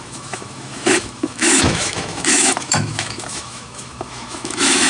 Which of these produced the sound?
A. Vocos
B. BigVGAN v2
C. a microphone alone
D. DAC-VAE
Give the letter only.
D